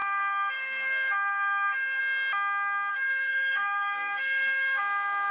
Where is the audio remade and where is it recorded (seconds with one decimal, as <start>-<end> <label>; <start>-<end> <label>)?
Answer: 0.0-2.0 remade; 2.0-2.9 recorded; 2.9-4.8 remade; 4.8-5.3 recorded